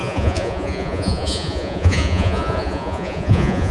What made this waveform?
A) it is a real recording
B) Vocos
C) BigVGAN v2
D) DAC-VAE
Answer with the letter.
B